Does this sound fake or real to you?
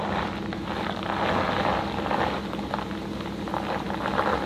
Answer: real